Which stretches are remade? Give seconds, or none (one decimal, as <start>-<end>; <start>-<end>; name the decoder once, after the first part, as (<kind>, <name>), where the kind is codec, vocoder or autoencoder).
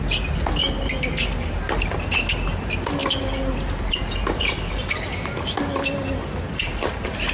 none